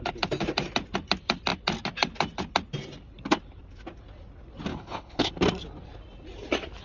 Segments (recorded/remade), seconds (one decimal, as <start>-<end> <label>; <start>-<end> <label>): 0.0-4.7 recorded; 4.7-5.3 remade; 5.3-6.8 recorded